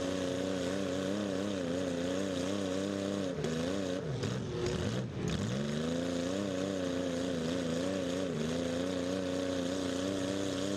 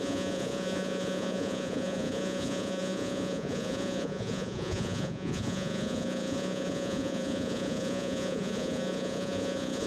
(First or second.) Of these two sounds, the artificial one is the second